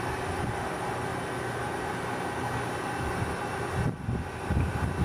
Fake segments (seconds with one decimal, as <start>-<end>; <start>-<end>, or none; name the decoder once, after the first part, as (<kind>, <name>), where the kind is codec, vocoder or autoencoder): none

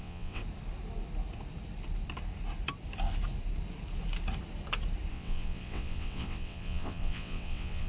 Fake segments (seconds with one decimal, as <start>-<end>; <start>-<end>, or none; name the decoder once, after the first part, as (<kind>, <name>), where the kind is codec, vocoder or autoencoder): 0.0-0.4 (vocoder, WaveNeXt); 5.1-7.9